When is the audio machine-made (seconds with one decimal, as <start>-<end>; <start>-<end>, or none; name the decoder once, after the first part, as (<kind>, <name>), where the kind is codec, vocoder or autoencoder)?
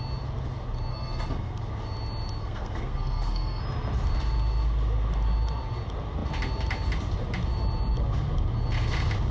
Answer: 0.9-1.6 (codec, SNAC); 2.4-3.6